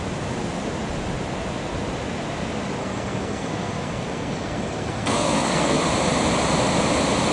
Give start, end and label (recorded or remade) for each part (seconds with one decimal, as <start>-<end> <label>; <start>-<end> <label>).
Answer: 0.0-2.8 recorded; 2.8-5.8 remade; 5.8-7.3 recorded